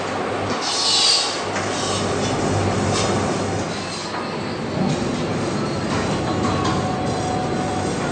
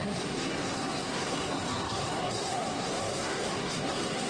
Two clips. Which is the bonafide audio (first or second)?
first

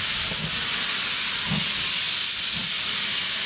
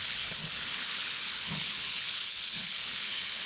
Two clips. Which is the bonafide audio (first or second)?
first